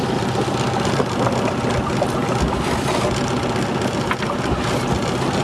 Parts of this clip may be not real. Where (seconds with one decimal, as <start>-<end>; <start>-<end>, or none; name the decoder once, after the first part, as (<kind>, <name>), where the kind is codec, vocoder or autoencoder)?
none